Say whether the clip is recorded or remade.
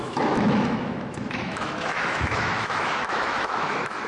remade